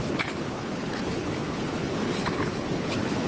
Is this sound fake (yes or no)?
yes